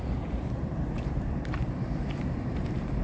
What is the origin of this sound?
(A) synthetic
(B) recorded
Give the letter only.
A